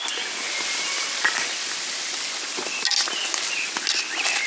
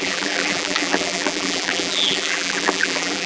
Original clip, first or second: first